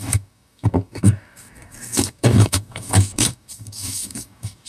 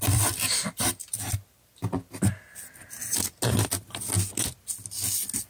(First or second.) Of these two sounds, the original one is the second